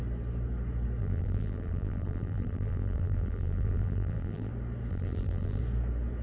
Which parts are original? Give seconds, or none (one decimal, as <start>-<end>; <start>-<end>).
0.0-1.0; 4.5-4.9; 5.6-6.2